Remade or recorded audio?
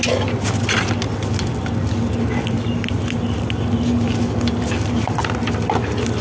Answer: recorded